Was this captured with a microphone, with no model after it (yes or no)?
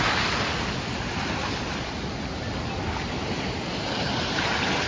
yes